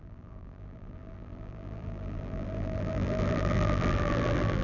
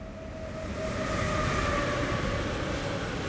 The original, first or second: second